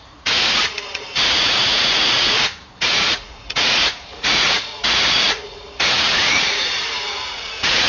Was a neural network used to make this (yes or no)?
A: yes